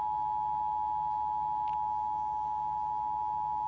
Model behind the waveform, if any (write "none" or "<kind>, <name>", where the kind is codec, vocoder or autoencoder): none